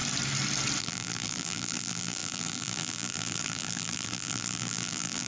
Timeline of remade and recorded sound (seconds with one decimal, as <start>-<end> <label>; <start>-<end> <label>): 0.0-0.8 recorded; 0.8-5.3 remade

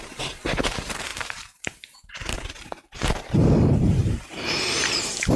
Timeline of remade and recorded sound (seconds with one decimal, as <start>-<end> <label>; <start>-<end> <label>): 0.0-5.4 remade